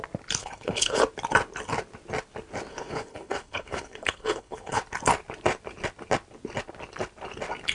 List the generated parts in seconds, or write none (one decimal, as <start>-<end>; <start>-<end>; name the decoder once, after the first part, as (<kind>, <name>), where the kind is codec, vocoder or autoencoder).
0.4-1.0 (codec, HILCodec); 2.7-4.8